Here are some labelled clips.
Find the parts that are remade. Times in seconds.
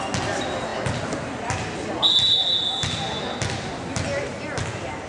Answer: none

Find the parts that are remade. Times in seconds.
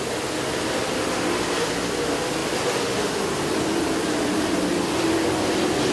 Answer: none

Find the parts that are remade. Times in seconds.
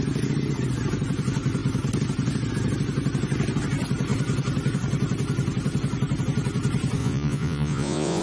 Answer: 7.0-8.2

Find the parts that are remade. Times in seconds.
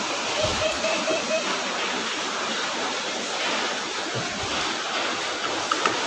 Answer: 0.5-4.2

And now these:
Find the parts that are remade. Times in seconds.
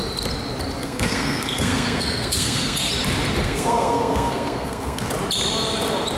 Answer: 0.8-2.9; 3.4-5.1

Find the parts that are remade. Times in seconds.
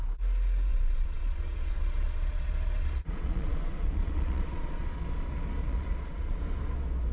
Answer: 0.7-5.0; 5.6-6.4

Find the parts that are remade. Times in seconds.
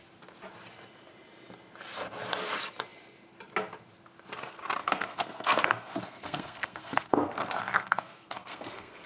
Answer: 4.8-9.1